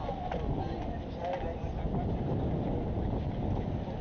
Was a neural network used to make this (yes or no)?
no